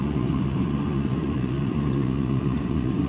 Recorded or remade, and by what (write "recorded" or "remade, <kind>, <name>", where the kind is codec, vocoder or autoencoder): remade, vocoder, Vocos